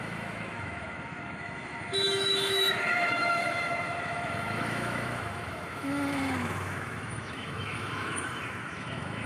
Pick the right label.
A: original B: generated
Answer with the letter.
B